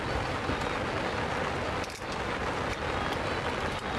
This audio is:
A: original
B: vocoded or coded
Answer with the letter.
A